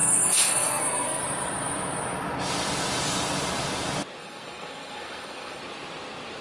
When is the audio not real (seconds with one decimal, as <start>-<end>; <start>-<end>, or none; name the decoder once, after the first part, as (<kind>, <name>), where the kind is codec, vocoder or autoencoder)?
0.0-1.2 (codec, SNAC); 4.2-5.6